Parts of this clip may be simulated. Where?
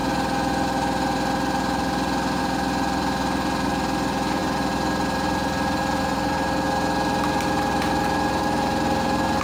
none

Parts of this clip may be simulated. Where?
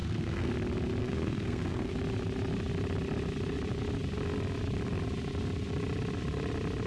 0.0-0.5 (codec, SNAC); 1.0-1.9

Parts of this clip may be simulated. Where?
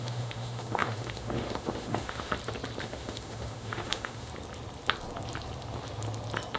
0.0-2.3 (autoencoder, DAC-VAE); 2.8-4.3